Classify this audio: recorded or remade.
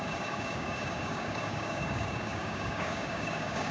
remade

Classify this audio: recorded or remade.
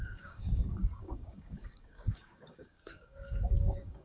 remade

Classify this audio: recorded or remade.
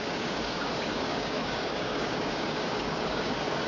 remade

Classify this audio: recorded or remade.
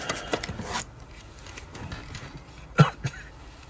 recorded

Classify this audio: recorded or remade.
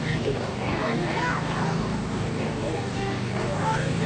remade